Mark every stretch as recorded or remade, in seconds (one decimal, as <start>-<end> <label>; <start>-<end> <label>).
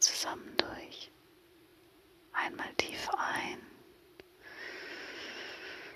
0.0-3.0 recorded; 3.0-5.4 remade; 5.4-6.0 recorded